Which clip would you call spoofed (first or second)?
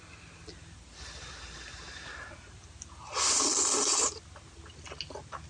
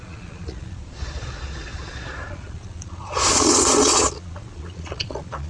second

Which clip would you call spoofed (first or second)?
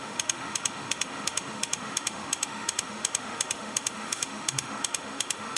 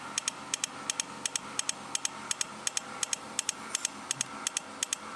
first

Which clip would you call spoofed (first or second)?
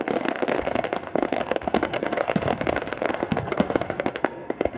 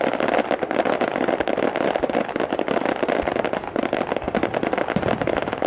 first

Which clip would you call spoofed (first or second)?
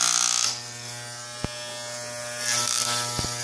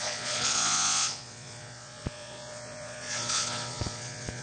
second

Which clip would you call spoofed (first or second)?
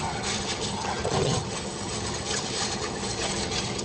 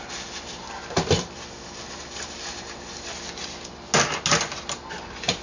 first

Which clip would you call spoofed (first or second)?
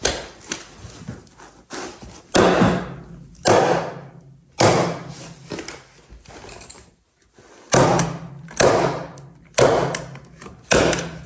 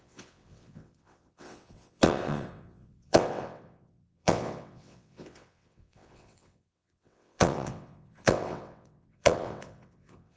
second